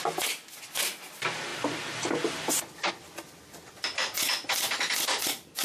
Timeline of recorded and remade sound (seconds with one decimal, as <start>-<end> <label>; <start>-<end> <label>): 0.0-5.6 recorded